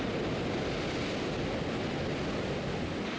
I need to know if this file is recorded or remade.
recorded